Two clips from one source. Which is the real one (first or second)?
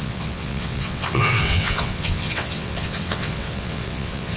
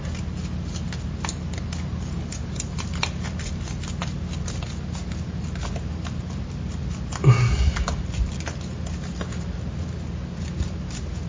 second